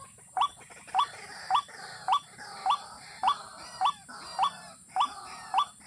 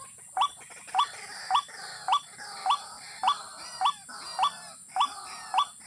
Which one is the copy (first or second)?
first